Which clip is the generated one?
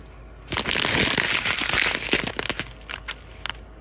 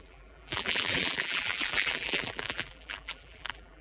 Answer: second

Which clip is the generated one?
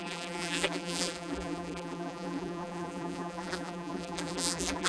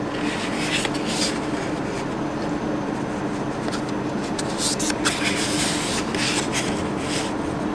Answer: first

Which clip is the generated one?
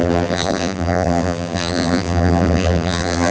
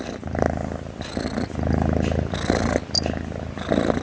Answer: first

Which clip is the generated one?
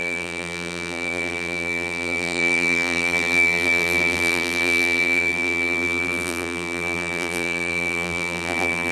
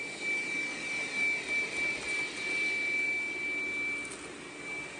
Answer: first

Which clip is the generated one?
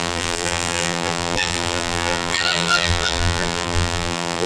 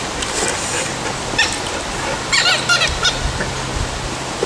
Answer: first